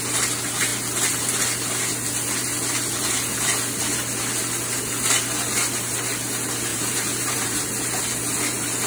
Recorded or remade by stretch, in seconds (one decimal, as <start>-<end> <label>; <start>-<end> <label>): 0.0-6.7 recorded; 6.7-8.0 remade; 8.0-8.9 recorded